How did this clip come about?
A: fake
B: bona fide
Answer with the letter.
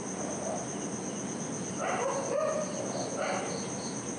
B